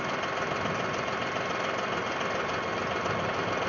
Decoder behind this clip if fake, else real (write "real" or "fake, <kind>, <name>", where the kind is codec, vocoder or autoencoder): real